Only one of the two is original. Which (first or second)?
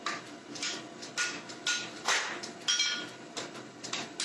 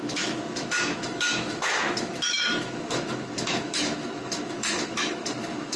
first